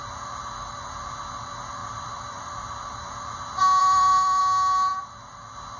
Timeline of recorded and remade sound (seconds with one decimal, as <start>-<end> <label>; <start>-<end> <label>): 0.0-1.8 recorded; 1.8-3.0 remade; 3.0-3.8 recorded; 3.8-4.4 remade; 4.4-5.8 recorded